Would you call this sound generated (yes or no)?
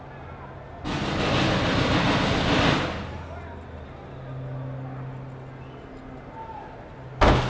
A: no